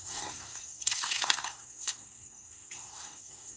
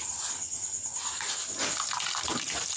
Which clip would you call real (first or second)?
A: second